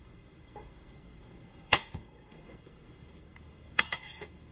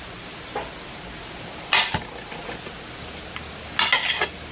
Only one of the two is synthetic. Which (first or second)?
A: first